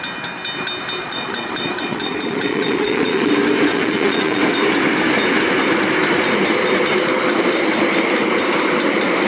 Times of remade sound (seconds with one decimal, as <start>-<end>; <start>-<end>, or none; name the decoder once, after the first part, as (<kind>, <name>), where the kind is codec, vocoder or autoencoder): 1.0-3.3 (vocoder, Vocos); 3.7-4.4